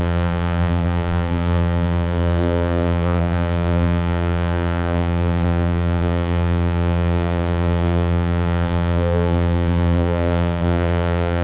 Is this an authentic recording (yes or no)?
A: no